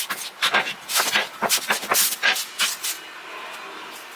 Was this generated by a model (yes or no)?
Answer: no